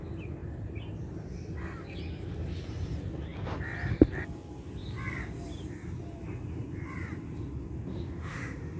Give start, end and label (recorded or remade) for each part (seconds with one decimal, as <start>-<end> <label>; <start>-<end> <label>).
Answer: 0.0-7.9 recorded; 7.9-8.8 remade